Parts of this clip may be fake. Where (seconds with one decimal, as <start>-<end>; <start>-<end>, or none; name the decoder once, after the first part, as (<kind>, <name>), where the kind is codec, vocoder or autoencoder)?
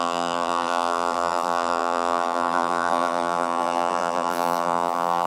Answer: 0.0-5.3 (vocoder, BigVGAN v2)